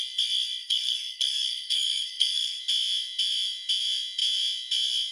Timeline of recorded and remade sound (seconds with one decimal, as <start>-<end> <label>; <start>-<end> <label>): 0.0-0.6 recorded; 0.6-2.6 remade; 2.6-5.1 recorded